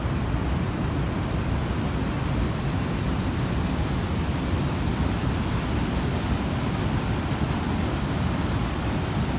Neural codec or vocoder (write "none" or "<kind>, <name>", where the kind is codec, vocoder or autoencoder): none